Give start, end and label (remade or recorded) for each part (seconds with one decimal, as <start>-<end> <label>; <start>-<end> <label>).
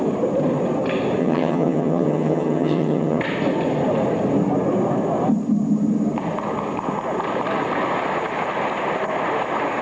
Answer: 0.0-1.2 recorded; 1.2-3.2 remade; 3.2-9.8 recorded